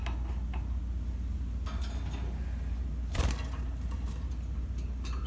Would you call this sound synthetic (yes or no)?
no